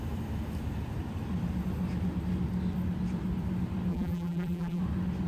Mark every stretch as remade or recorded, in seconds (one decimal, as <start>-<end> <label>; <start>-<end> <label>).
0.0-3.9 recorded; 3.9-4.8 remade; 4.8-5.3 recorded